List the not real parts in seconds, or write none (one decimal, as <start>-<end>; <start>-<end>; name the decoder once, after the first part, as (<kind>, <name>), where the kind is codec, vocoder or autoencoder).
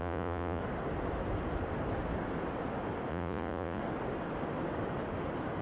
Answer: 0.0-0.6 (vocoder, Vocos); 3.1-3.8